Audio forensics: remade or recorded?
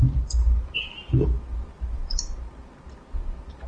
recorded